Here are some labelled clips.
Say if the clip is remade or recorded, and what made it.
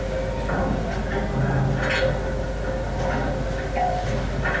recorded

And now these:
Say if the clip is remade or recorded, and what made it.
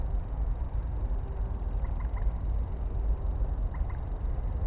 recorded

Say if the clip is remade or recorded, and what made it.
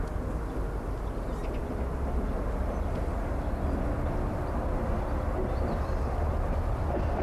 recorded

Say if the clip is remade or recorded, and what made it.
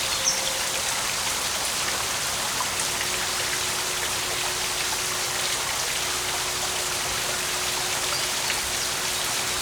recorded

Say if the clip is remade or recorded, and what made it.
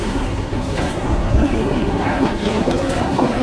remade, codec, SNAC